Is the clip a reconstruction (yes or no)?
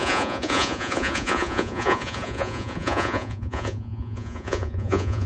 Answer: yes